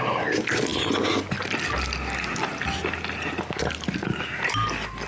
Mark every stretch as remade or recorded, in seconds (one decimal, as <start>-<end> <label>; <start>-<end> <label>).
0.0-5.1 recorded